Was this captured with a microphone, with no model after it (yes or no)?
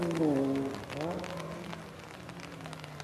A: yes